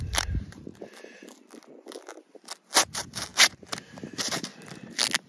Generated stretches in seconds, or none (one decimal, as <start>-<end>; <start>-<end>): 0.0-0.7; 2.8-4.5